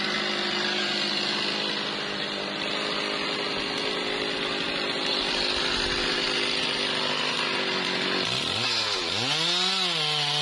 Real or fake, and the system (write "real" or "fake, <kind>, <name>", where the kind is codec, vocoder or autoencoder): real